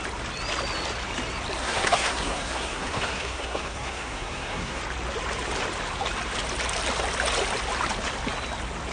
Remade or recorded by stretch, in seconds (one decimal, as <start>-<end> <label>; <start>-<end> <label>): 0.0-1.6 recorded; 1.6-4.8 remade; 4.8-8.9 recorded